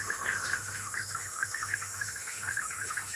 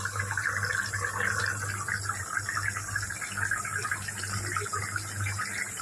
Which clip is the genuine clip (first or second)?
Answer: second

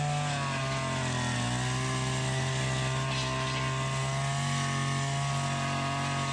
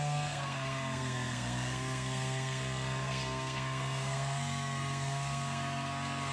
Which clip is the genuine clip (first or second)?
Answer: first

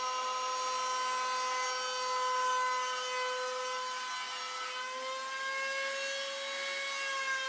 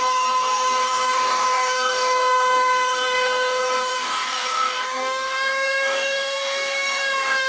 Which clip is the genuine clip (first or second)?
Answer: first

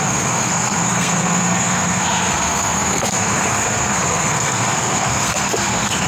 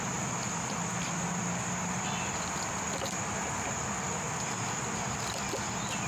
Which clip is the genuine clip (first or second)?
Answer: second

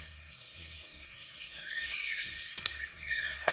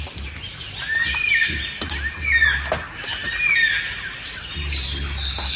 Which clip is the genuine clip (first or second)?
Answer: second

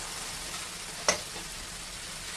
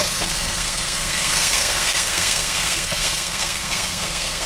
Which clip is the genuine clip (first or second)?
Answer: first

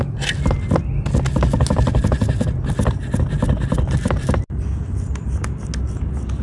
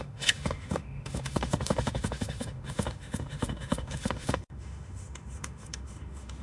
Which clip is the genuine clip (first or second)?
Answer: first